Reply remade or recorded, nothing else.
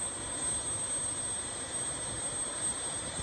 remade